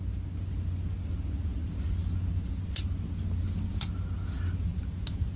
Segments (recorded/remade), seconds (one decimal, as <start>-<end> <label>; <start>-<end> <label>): 0.0-5.4 recorded